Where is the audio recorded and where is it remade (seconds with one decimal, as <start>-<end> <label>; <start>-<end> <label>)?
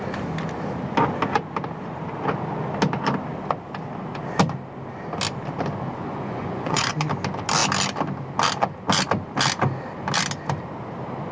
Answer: 0.0-6.0 recorded; 6.0-6.9 remade; 6.9-11.3 recorded